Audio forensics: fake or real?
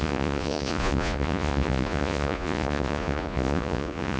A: fake